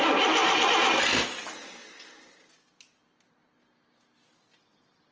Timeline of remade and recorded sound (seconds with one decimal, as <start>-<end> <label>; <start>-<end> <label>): 0.0-5.1 recorded